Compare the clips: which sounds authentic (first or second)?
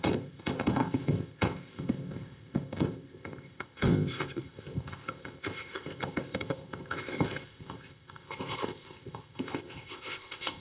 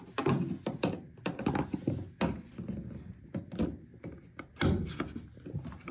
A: second